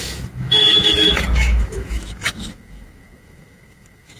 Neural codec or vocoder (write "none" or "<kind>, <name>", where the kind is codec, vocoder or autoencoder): autoencoder, DAC-VAE